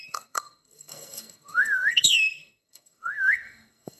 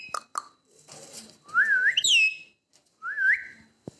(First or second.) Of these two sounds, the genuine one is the second